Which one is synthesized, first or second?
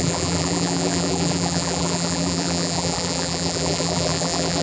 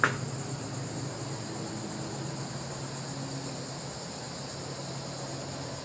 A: first